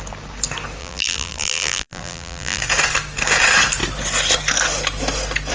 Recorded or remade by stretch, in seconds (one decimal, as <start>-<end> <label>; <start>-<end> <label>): 0.0-0.8 recorded; 0.8-2.6 remade; 2.6-5.5 recorded